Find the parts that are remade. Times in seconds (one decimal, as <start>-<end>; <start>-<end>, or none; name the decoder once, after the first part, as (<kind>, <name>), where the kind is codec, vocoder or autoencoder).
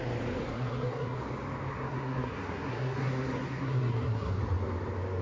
0.5-1.2 (codec, SNAC); 1.7-4.4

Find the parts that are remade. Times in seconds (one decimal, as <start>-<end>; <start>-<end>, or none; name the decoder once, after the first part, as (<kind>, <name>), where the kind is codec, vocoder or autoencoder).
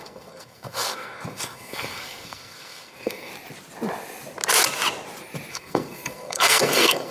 0.0-3.3 (codec, SNAC); 5.5-7.1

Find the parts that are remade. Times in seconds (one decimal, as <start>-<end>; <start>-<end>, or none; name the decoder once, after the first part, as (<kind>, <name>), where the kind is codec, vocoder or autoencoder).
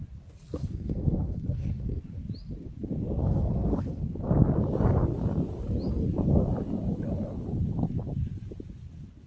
0.6-2.0 (codec, SNAC); 3.2-4.0